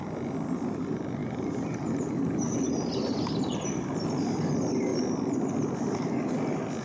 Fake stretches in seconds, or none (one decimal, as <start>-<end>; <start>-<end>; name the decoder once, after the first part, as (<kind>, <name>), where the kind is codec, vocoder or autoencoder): none